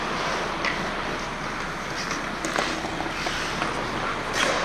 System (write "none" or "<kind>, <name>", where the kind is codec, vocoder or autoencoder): none